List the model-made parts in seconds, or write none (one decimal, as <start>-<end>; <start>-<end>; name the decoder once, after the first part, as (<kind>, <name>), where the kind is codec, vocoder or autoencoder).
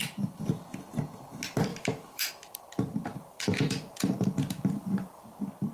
1.7-2.3 (vocoder, BigVGAN v2); 3.1-5.2